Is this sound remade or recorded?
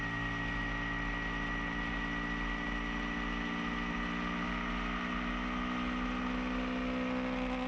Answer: recorded